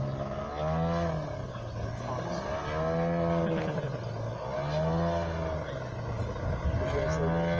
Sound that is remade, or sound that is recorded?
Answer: recorded